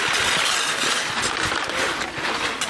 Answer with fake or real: real